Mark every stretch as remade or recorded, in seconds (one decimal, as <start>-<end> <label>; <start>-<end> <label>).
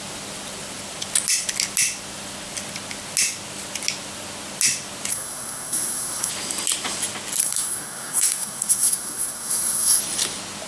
0.0-5.1 recorded; 5.1-6.3 remade; 6.3-7.4 recorded; 7.4-10.0 remade; 10.0-10.7 recorded